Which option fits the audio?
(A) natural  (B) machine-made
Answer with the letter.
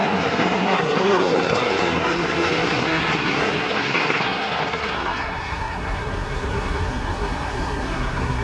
B